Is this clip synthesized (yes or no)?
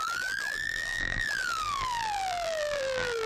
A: yes